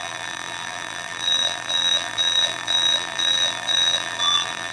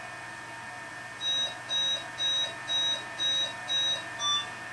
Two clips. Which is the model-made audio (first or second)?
first